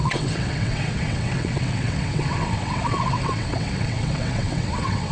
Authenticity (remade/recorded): remade